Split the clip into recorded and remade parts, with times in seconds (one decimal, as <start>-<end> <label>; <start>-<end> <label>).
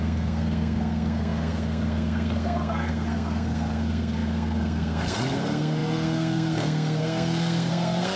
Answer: 0.0-8.2 remade